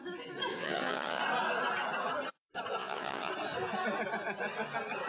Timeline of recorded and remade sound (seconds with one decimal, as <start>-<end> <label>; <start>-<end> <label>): 0.0-0.5 recorded; 0.5-1.2 remade; 1.2-2.8 recorded; 2.8-3.3 remade; 3.3-5.1 recorded